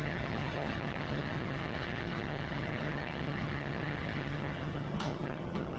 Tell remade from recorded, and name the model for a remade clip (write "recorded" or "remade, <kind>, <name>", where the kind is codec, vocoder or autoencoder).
remade, vocoder, HiFi-GAN